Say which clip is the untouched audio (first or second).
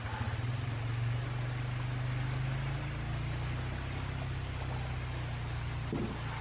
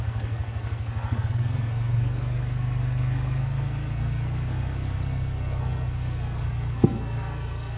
first